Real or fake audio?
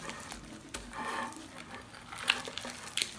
real